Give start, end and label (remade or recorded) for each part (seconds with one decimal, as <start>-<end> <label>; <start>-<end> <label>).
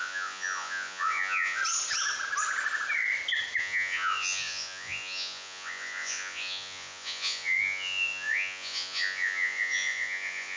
0.0-1.6 remade; 1.6-3.6 recorded; 3.6-10.6 remade